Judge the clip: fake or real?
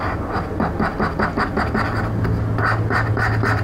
real